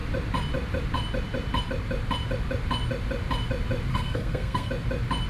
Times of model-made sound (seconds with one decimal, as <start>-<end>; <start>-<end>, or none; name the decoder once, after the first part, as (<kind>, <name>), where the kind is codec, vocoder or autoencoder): 3.9-4.7 (codec, SNAC)